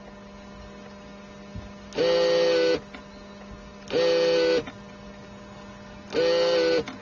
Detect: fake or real real